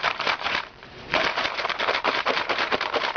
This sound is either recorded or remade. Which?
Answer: remade